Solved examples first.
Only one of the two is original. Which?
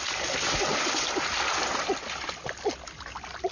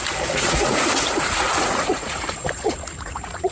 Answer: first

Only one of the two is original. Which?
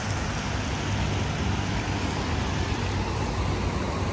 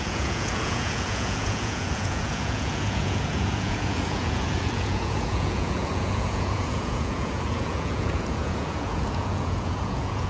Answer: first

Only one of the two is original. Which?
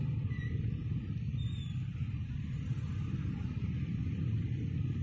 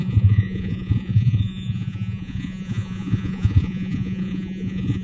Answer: first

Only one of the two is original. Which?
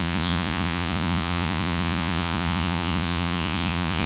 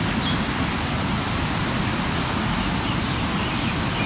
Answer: second